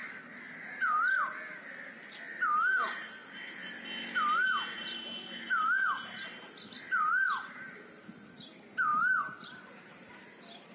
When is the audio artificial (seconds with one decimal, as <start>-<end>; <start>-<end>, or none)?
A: 8.9-10.1